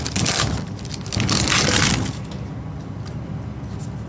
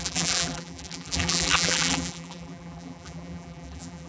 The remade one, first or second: second